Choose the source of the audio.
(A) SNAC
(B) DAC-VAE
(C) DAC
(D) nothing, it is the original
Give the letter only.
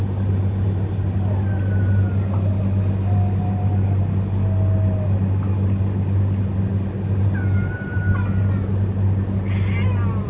D